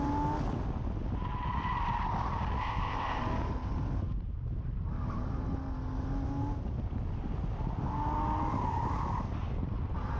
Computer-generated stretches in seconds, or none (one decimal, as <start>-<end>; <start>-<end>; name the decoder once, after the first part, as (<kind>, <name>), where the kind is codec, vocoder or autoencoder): 2.6-3.2 (codec, ZipCodec)